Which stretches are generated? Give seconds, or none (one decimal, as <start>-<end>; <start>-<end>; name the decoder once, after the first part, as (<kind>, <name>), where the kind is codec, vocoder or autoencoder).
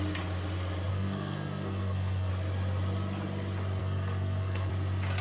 0.9-2.3 (codec, SNAC); 3.8-4.7